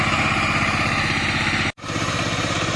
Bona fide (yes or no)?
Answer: yes